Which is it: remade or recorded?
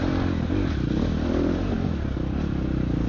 recorded